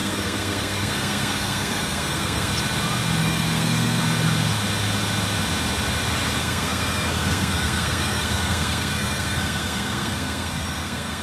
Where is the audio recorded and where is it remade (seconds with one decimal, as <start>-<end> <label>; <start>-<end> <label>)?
0.0-2.5 remade; 2.5-3.2 recorded; 3.2-4.0 remade; 4.0-6.4 recorded; 6.4-11.2 remade

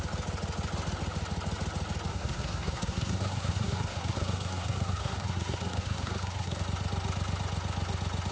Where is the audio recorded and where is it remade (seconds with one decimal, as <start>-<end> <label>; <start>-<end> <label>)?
0.0-2.1 recorded; 2.1-6.6 remade; 6.6-8.3 recorded

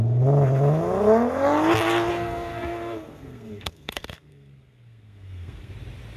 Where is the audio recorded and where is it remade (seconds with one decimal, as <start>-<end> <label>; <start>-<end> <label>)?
0.0-2.1 recorded; 2.1-5.7 remade; 5.7-6.2 recorded